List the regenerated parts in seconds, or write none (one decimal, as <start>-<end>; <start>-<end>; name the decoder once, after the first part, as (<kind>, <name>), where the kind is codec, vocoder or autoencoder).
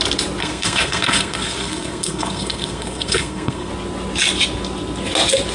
0.4-3.7 (codec, SNAC)